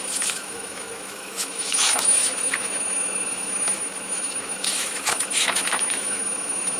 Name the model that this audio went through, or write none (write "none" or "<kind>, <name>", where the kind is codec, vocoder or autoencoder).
autoencoder, DAC-VAE